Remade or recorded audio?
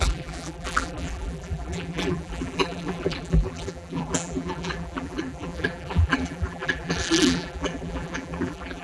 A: remade